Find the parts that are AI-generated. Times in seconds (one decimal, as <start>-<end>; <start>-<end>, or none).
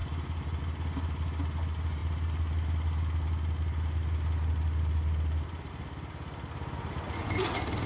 none